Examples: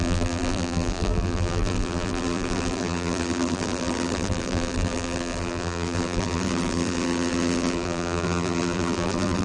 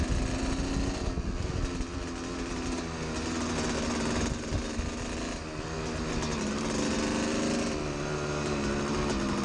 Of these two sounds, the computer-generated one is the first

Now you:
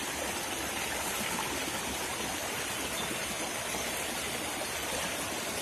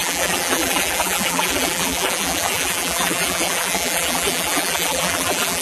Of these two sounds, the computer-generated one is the second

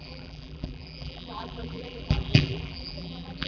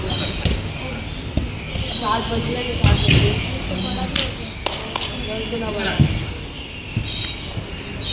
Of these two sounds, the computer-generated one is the first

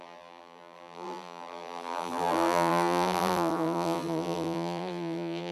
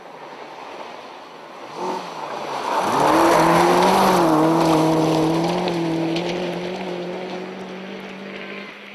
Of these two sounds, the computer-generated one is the first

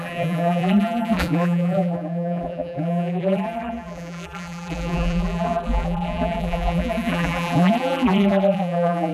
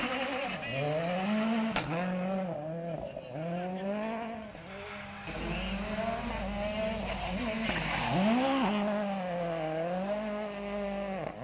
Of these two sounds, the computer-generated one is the first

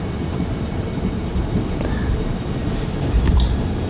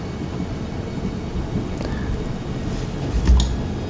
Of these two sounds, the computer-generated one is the first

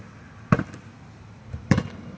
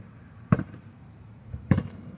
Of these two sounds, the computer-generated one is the second